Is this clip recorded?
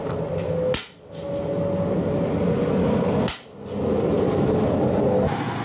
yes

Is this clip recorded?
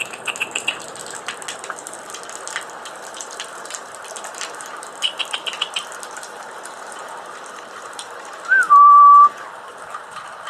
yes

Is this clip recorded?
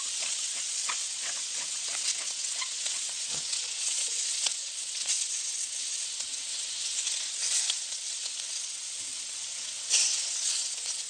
no